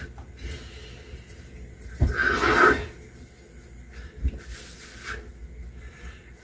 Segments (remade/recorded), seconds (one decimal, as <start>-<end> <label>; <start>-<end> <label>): 0.0-6.4 recorded